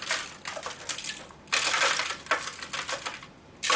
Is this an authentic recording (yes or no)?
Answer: yes